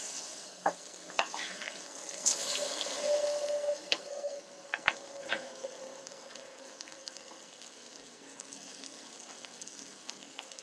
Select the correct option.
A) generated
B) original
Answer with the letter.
A